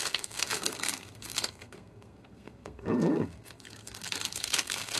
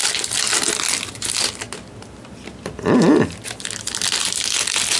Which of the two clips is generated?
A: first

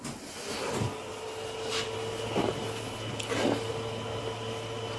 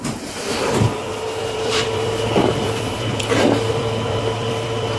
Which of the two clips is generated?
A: second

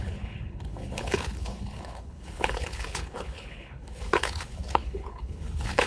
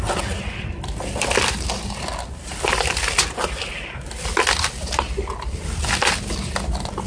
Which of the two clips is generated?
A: first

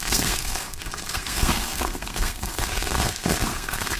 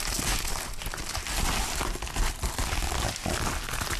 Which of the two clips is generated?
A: first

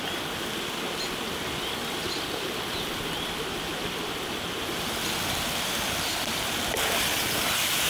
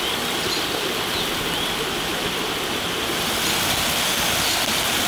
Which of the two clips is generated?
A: first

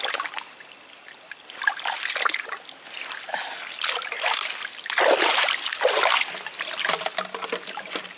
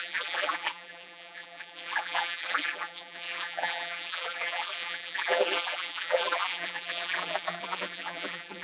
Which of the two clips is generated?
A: second